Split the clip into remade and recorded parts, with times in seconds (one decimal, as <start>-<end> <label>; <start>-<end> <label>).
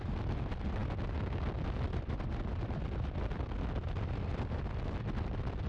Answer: 0.0-5.7 recorded